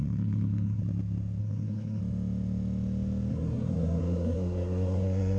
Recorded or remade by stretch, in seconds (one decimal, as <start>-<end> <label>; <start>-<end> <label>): 0.0-0.8 remade; 0.8-1.4 recorded; 1.4-2.0 remade; 2.0-3.3 recorded; 3.3-5.4 remade